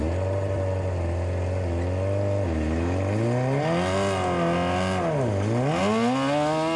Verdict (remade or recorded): recorded